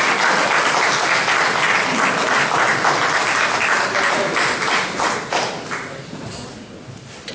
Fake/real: real